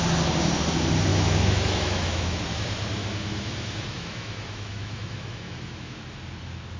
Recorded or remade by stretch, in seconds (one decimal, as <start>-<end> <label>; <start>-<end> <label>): 0.0-1.1 recorded; 1.1-2.4 remade; 2.4-3.0 recorded; 3.0-6.0 remade; 6.0-6.8 recorded